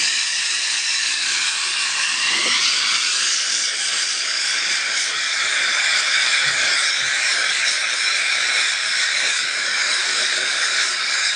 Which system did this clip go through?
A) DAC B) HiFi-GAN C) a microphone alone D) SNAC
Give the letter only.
A